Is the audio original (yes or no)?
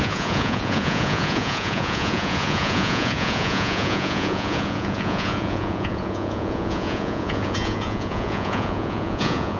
no